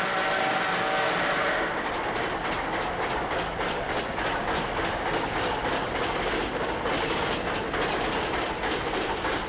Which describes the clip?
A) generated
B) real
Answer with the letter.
B